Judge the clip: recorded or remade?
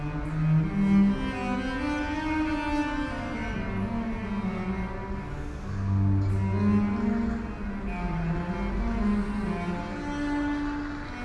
recorded